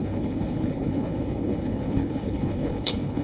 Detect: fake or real fake